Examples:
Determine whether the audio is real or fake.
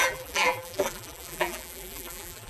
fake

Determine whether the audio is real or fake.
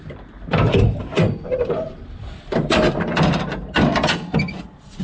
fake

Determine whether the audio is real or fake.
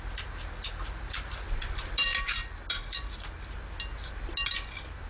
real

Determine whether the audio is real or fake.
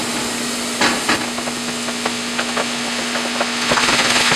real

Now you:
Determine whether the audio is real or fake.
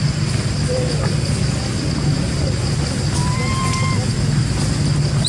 real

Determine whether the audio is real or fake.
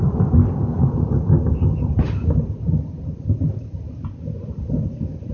real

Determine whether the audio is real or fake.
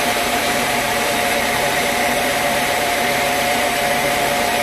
fake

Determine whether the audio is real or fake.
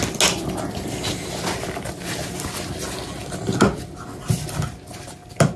real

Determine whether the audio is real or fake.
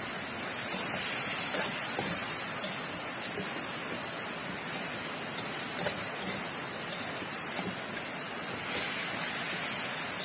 real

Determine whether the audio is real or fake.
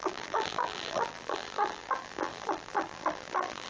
fake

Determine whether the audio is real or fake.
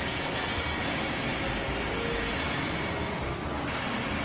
real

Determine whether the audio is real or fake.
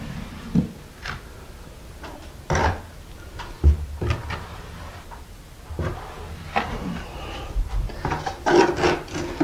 real